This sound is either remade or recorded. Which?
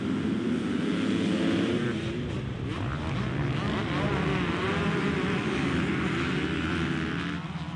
recorded